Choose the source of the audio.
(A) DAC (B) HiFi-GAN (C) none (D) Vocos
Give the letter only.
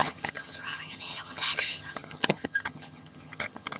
B